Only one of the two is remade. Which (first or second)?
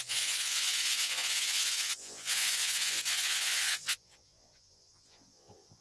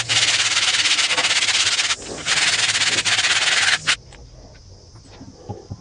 first